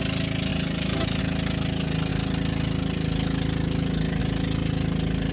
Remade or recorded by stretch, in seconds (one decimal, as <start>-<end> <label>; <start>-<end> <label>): 0.0-0.5 recorded; 0.5-1.2 remade; 1.2-5.3 recorded